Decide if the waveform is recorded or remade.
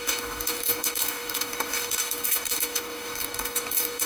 remade